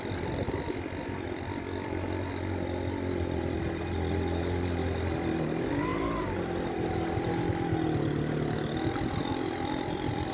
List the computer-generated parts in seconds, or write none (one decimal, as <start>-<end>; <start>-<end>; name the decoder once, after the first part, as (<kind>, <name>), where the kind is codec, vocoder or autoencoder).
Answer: none